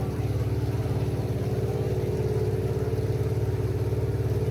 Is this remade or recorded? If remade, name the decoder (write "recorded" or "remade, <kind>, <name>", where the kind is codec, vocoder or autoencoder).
remade, vocoder, BigVGAN v2